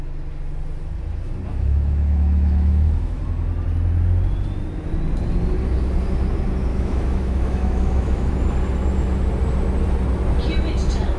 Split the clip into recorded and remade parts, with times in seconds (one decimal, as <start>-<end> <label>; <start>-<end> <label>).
0.0-1.5 recorded; 1.5-3.2 remade; 3.2-6.7 recorded; 6.7-8.3 remade; 8.3-11.2 recorded